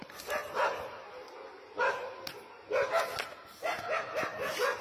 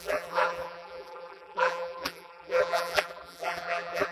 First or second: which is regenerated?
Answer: second